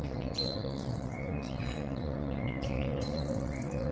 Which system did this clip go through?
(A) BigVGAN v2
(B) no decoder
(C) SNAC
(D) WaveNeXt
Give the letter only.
D